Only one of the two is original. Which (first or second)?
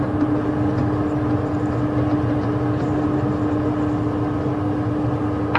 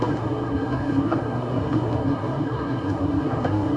first